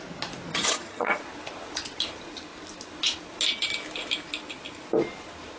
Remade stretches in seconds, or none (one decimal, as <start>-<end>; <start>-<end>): 0.5-1.2